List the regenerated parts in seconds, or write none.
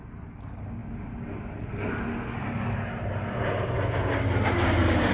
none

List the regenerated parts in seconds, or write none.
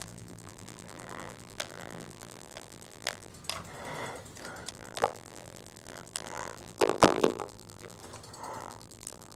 0.0-3.3 (vocoder, BigVGAN v2); 4.7-8.0; 8.6-9.4